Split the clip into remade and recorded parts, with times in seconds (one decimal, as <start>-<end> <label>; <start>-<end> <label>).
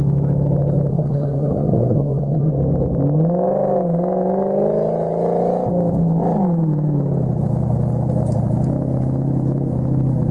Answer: 0.0-0.9 recorded; 0.9-2.5 remade; 2.5-10.3 recorded